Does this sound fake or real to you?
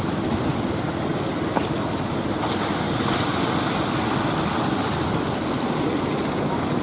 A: real